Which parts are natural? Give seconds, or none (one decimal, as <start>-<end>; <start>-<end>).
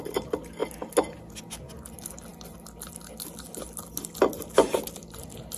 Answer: 0.0-5.6